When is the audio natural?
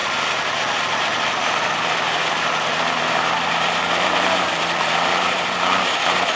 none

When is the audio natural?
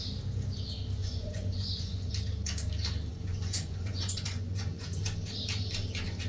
0.0-1.0; 2.1-3.1; 5.0-6.3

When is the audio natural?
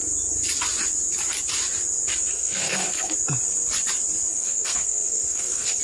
0.0-2.3; 3.1-4.3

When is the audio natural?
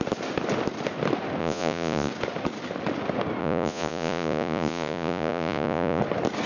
0.0-1.4; 2.1-3.4; 6.0-6.5